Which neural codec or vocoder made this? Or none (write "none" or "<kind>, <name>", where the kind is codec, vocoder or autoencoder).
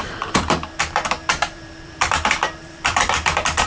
vocoder, BigVGAN v2